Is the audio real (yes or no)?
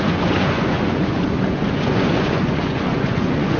no